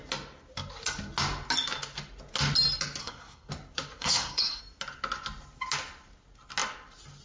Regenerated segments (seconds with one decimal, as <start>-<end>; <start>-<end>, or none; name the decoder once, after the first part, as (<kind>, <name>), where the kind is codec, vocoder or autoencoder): 3.0-3.5 (codec, SNAC); 4.0-4.6